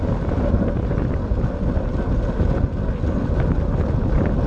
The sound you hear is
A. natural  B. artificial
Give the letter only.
A